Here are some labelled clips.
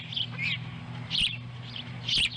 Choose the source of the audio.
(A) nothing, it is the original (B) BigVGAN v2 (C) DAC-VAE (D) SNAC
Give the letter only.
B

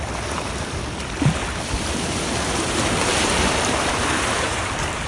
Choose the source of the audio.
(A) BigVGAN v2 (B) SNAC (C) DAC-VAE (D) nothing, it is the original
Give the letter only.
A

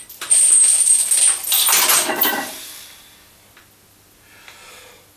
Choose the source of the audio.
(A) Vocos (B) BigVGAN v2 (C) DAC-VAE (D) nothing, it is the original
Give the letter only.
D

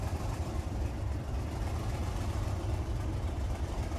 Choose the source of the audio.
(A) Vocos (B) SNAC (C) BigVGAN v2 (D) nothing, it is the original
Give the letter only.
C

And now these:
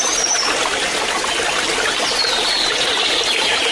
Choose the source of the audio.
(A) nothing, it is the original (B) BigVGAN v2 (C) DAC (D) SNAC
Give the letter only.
A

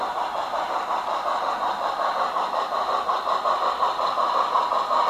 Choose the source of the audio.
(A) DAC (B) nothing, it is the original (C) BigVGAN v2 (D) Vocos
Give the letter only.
B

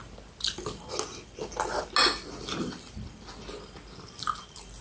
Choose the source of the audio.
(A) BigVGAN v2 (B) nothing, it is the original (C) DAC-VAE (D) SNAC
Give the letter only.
B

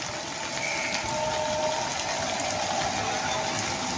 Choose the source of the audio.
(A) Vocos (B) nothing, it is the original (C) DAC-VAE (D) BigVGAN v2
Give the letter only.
B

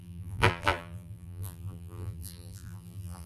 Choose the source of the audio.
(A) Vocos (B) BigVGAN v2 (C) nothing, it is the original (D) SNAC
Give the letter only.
B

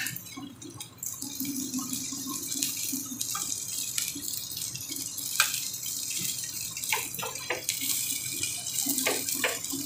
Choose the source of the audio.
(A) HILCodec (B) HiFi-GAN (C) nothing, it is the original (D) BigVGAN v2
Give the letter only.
D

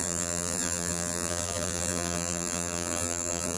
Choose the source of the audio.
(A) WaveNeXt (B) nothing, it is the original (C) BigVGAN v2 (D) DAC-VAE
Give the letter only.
C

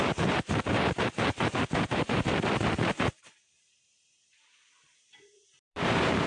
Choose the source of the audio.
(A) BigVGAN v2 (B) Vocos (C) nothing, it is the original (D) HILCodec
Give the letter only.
A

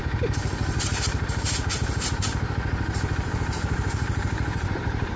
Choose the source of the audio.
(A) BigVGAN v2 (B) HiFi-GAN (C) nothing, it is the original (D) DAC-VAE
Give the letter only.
A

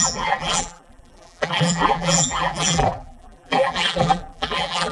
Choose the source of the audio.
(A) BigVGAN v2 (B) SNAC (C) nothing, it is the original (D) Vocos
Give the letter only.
A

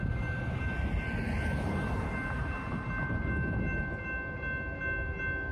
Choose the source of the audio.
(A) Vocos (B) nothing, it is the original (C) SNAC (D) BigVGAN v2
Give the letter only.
B